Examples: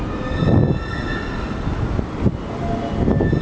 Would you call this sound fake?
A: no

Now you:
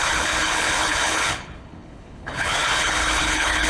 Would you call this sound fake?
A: yes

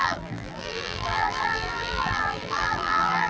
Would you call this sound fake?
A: yes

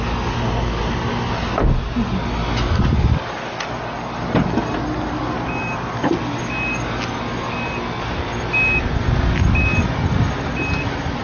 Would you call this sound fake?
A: no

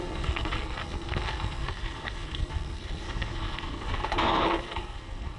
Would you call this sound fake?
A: yes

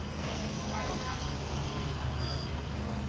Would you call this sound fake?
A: yes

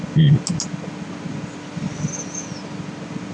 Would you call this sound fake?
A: no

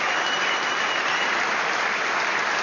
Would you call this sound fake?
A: yes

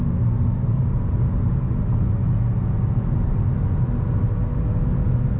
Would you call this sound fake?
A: no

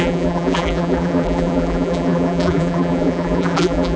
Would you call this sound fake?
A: yes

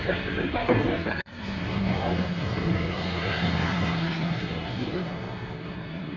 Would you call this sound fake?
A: yes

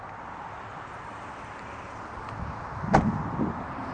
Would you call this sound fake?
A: no